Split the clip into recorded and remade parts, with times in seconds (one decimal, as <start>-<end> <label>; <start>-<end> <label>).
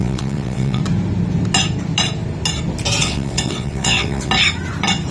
0.0-0.8 remade; 0.8-3.0 recorded; 3.0-4.3 remade; 4.3-5.1 recorded